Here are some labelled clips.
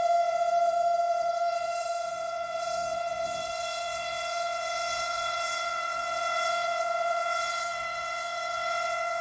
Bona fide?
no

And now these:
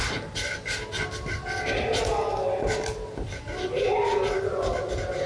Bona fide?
yes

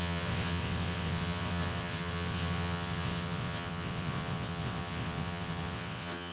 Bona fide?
no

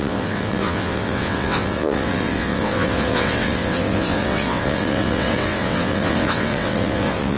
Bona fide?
no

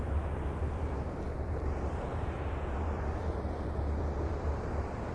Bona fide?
yes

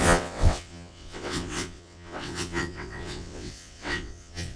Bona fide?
no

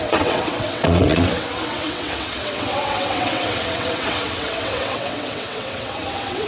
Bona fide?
no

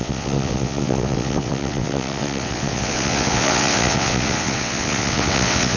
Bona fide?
no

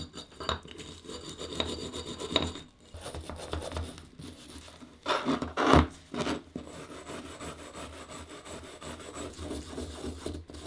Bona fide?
yes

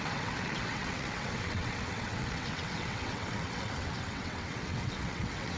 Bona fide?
no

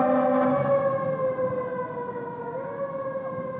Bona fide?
yes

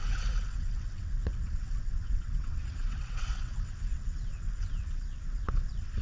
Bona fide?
no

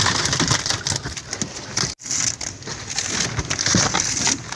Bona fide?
yes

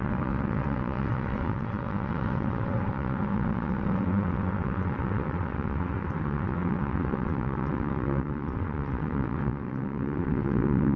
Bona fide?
no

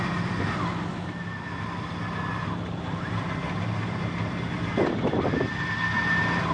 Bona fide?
yes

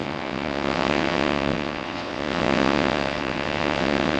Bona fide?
no